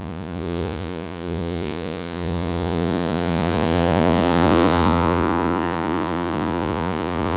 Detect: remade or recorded remade